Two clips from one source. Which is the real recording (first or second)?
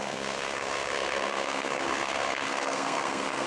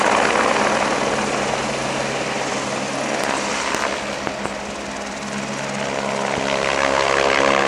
second